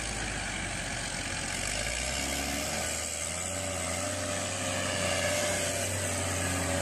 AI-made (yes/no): no